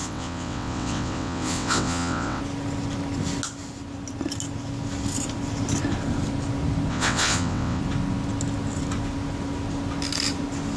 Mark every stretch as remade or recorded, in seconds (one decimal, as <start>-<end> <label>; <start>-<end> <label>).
0.0-2.4 remade; 2.4-6.9 recorded; 6.9-7.8 remade; 7.8-10.8 recorded

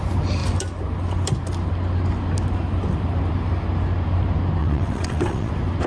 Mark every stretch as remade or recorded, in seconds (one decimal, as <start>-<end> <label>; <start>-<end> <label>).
0.0-4.6 recorded; 4.6-5.5 remade; 5.5-5.9 recorded

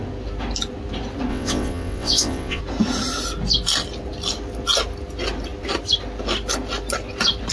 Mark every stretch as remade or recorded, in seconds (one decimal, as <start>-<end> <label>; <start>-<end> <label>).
0.0-1.3 recorded; 1.3-2.6 remade; 2.6-7.5 recorded

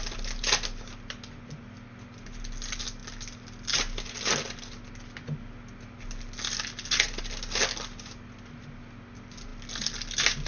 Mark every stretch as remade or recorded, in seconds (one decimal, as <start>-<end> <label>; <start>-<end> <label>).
0.0-10.5 recorded

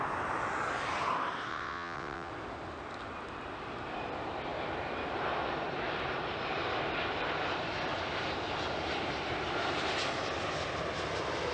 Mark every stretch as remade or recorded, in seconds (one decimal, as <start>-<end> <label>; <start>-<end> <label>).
0.0-1.5 recorded; 1.5-2.3 remade; 2.3-11.5 recorded